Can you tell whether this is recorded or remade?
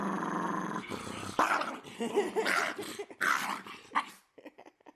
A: recorded